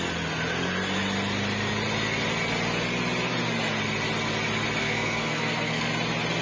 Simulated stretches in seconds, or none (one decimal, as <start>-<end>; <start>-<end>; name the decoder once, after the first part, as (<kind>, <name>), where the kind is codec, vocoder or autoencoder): 4.8-5.9 (codec, SNAC)